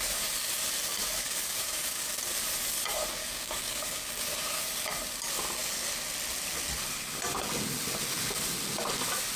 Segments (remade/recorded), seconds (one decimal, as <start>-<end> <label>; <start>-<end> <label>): 0.0-1.0 recorded; 1.0-2.1 remade; 2.1-3.2 recorded; 3.2-4.1 remade; 4.1-9.4 recorded